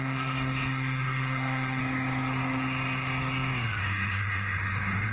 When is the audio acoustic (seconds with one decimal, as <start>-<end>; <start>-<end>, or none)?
1.8-3.8